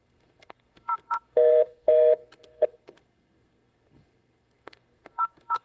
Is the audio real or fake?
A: fake